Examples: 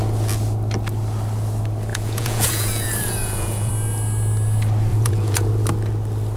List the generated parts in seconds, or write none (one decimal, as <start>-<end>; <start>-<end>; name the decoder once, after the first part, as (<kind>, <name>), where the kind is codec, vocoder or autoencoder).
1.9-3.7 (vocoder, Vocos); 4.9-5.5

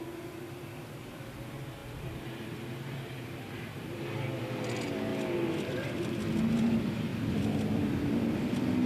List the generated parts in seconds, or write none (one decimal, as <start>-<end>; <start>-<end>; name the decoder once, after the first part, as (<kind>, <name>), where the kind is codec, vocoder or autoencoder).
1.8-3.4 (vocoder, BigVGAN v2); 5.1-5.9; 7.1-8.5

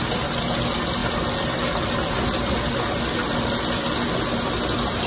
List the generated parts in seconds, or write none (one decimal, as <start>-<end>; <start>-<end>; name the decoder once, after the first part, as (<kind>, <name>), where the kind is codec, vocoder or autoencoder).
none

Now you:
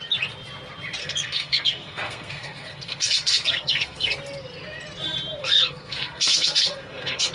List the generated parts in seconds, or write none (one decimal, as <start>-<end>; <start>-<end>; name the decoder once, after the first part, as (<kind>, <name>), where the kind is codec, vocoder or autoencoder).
1.0-4.1 (codec, SNAC); 5.4-7.3

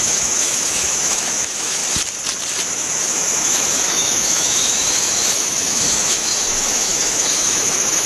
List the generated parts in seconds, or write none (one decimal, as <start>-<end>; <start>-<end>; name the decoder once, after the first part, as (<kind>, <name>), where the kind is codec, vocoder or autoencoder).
0.0-1.8 (autoencoder, DAC-VAE); 2.7-8.1

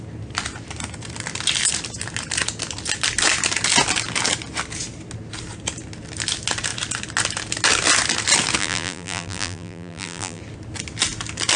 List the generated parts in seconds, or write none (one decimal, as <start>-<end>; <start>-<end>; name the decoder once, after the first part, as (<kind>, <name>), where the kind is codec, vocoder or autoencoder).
8.6-10.4 (vocoder, BigVGAN v2)

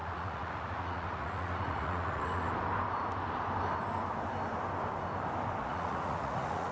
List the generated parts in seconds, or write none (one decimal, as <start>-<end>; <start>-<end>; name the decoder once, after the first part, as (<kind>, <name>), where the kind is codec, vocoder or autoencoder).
0.0-2.5 (vocoder, Vocos); 5.6-6.7